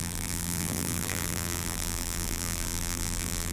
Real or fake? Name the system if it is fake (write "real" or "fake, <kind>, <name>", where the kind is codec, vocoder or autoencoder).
fake, vocoder, BigVGAN v2